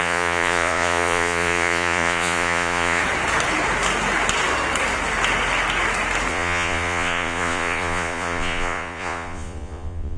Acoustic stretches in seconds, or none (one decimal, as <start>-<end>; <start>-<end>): 3.0-6.3